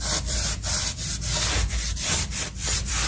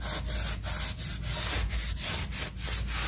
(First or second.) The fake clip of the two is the first